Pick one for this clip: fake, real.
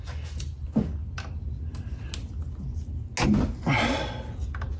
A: real